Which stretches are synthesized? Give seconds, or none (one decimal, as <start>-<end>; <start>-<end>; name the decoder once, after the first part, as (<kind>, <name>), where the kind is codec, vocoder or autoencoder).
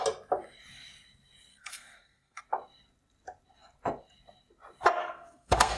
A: 1.5-2.4 (codec, SNAC); 5.0-5.8